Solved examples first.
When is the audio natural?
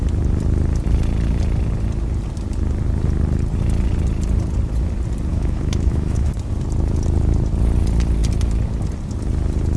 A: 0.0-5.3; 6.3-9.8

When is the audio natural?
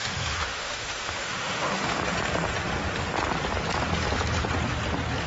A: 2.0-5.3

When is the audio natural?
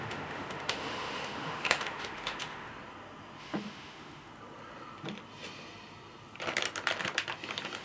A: 2.7-3.4; 4.3-7.8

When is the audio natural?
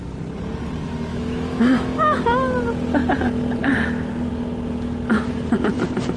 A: 0.0-1.1; 2.2-6.2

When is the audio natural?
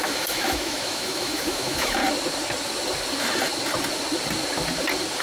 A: 2.0-5.2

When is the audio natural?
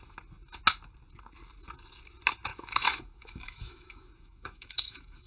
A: 0.0-2.5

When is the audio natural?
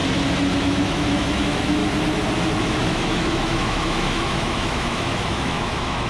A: 0.0-0.6; 1.8-2.6